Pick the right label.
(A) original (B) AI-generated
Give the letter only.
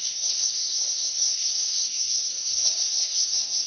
B